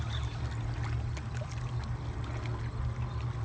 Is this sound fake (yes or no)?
no